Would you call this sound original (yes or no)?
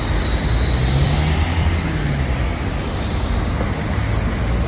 yes